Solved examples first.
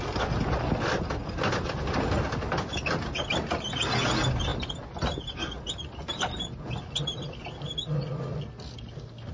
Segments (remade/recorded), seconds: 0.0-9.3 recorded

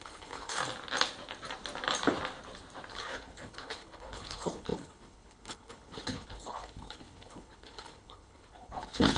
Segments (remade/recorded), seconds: 0.0-0.6 remade; 0.6-2.9 recorded; 2.9-9.2 remade

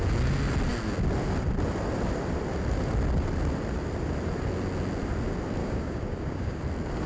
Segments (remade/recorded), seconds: 0.0-5.6 recorded; 5.6-6.6 remade; 6.6-7.1 recorded

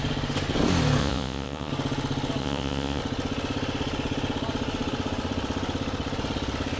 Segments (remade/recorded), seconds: 0.0-1.0 recorded; 1.0-1.7 remade; 1.7-2.4 recorded; 2.4-3.0 remade; 3.0-6.8 recorded

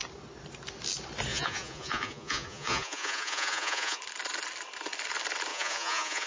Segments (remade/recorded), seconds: 0.0-1.3 recorded; 1.3-4.0 remade; 4.0-5.5 recorded; 5.5-6.3 remade

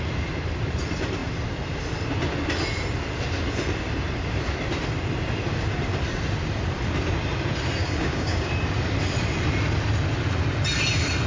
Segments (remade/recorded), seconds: 0.0-7.8 recorded; 7.8-8.5 remade; 8.5-11.3 recorded

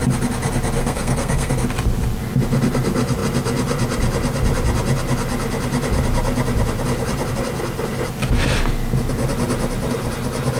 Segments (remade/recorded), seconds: 0.0-0.8 recorded; 0.8-1.5 remade; 1.5-10.6 recorded

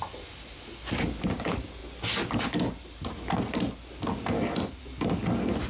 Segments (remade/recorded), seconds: 0.0-5.7 recorded